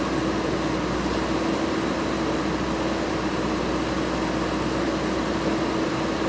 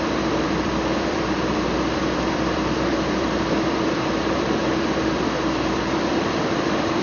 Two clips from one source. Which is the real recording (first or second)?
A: first